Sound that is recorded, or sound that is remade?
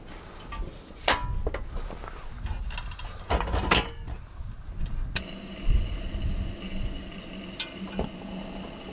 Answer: recorded